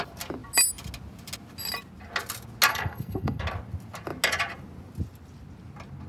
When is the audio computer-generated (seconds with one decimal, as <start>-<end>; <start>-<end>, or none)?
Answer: 2.7-3.4